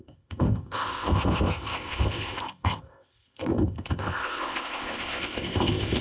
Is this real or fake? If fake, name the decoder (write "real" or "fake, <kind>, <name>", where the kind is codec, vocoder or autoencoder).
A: fake, codec, ZipCodec